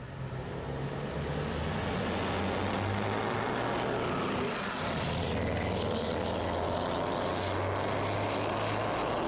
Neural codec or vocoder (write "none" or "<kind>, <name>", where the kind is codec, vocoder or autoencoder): none